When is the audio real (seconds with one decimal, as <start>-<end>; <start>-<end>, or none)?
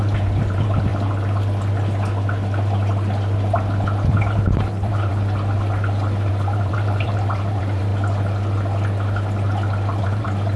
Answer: 0.9-4.2; 5.1-6.3; 7.9-10.0